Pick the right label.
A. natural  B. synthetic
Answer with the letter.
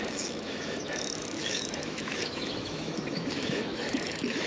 B